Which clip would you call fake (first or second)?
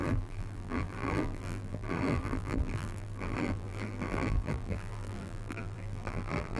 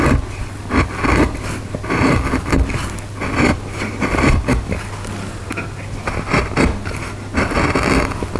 first